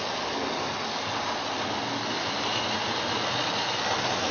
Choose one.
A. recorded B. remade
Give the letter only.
A